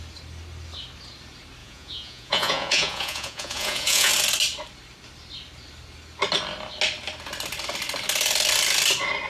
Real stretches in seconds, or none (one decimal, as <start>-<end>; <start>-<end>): 0.0-1.6; 4.1-9.3